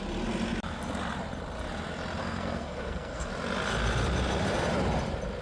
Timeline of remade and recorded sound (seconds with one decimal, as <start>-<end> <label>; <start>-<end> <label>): 0.0-2.2 recorded; 2.2-3.3 remade; 3.3-5.4 recorded